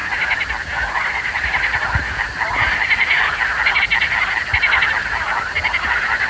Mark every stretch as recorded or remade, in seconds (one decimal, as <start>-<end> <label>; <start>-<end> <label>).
0.0-6.3 recorded